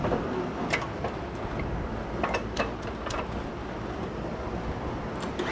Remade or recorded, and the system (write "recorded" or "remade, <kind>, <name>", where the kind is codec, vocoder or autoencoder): recorded